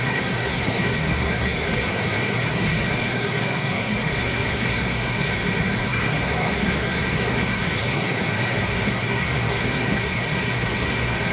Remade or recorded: remade